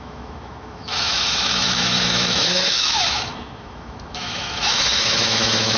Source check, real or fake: fake